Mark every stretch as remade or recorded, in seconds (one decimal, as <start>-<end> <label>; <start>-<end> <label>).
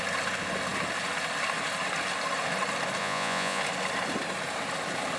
0.0-3.0 recorded; 3.0-3.6 remade; 3.6-5.2 recorded